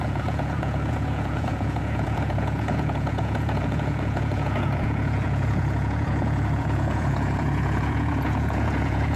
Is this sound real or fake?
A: fake